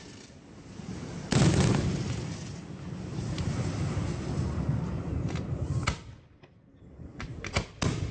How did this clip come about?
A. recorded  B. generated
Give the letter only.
A